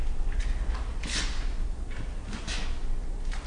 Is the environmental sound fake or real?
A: real